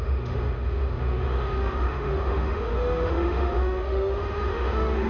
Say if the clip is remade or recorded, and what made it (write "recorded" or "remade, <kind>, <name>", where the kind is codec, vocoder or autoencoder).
remade, autoencoder, DAC-VAE